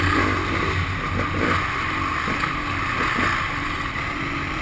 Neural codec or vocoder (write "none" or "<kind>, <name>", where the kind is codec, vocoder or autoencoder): none